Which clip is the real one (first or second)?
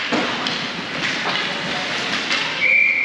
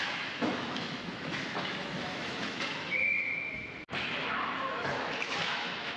first